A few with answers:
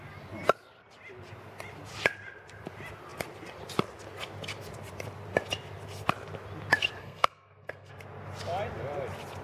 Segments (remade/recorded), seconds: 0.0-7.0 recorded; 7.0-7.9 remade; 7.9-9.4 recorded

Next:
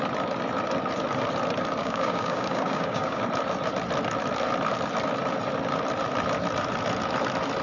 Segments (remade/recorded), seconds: 0.0-1.8 recorded; 1.8-3.2 remade; 3.2-7.6 recorded

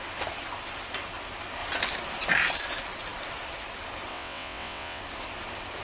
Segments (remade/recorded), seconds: 0.0-4.1 recorded; 4.1-5.0 remade; 5.0-5.8 recorded

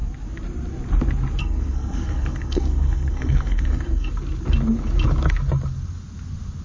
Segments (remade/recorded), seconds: 0.0-1.4 recorded; 1.4-4.1 remade; 4.1-6.6 recorded

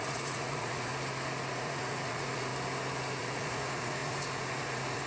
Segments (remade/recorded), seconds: 0.0-0.9 remade; 0.9-1.5 recorded; 1.5-2.5 remade; 2.5-3.2 recorded; 3.2-5.1 remade